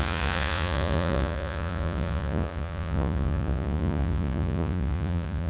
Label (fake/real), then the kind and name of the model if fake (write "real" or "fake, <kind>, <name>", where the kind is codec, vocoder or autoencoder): fake, vocoder, Vocos